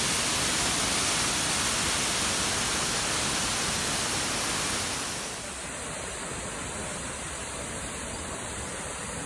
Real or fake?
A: real